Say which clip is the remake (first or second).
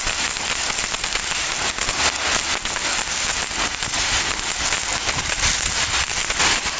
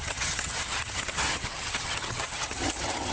second